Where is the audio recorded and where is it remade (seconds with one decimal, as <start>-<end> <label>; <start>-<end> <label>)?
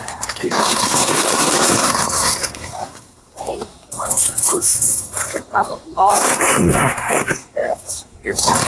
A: 0.0-8.7 remade